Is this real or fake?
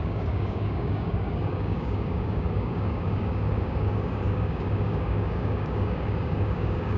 fake